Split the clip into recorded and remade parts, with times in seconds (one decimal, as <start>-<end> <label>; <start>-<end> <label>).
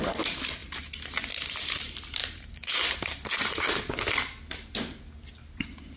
0.0-2.2 recorded; 2.2-3.7 remade; 3.7-6.0 recorded